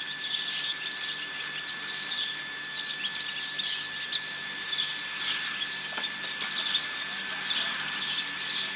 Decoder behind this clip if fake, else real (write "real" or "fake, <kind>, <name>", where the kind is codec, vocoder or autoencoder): real